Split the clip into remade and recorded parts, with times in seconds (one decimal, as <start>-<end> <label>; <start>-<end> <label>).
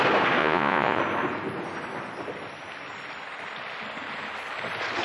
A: 0.0-0.4 recorded; 0.4-1.0 remade; 1.0-5.0 recorded